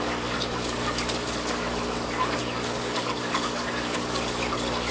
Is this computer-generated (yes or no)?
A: yes